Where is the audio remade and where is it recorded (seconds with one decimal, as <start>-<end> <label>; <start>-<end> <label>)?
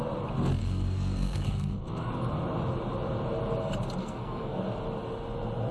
0.0-0.6 recorded; 0.6-2.1 remade; 2.1-4.0 recorded; 4.0-4.6 remade; 4.6-5.7 recorded